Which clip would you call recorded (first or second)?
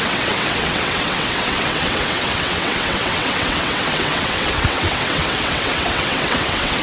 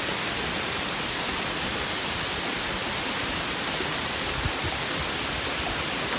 second